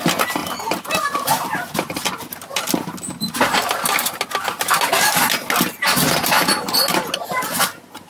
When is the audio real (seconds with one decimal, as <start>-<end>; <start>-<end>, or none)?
0.0-8.1